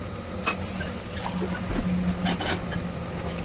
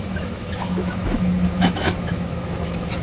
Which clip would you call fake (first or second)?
second